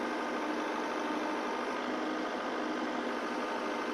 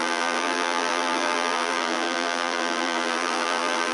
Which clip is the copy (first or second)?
second